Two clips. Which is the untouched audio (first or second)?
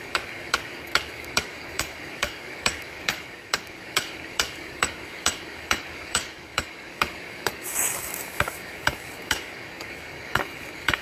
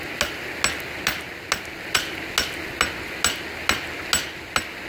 second